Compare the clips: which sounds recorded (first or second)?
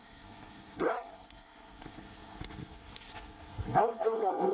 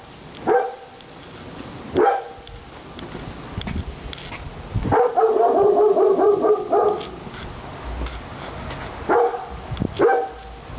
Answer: second